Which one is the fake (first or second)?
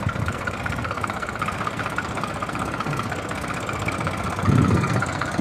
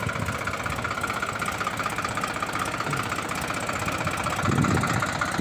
first